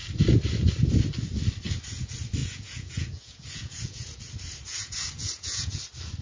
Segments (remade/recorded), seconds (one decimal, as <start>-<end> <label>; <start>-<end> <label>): 0.0-2.4 recorded; 2.4-4.3 remade; 4.3-4.7 recorded; 4.7-5.8 remade; 5.8-6.2 recorded